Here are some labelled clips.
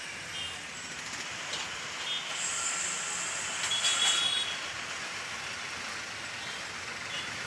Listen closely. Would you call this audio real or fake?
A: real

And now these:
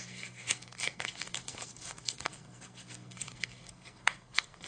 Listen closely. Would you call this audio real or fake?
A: fake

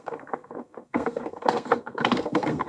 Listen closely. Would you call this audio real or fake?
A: fake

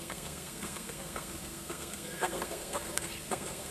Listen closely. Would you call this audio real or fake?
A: fake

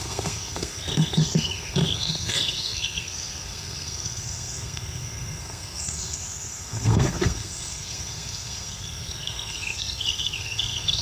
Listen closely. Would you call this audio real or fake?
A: fake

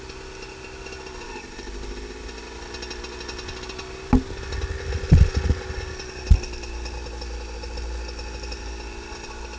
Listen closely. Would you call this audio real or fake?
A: real